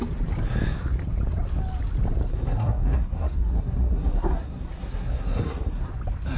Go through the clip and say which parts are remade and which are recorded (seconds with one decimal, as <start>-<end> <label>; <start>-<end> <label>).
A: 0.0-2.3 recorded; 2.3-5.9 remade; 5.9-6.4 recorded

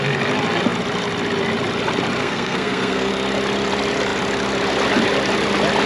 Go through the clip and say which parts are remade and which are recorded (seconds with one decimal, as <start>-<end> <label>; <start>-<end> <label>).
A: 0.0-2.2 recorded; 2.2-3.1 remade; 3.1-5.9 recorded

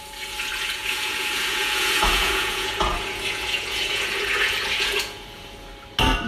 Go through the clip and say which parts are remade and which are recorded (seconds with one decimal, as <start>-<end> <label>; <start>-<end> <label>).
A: 0.0-5.7 remade; 5.7-6.3 recorded

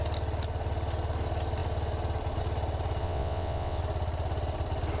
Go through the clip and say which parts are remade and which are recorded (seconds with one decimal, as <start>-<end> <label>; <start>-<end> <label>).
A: 0.0-3.0 recorded; 3.0-3.8 remade; 3.8-5.0 recorded